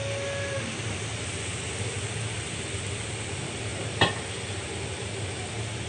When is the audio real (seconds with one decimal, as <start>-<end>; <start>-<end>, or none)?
0.0-5.9

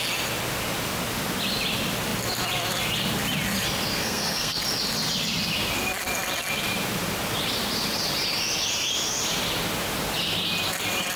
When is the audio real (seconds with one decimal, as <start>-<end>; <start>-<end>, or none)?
0.0-3.9; 4.6-11.2

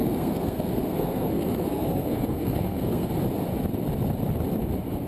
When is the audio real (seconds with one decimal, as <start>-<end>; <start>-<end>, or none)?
3.1-5.1